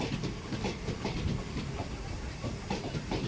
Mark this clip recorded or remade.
remade